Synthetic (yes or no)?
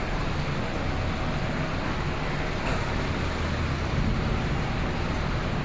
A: no